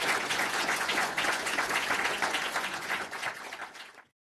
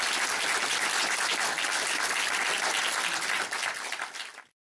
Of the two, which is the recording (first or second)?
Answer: second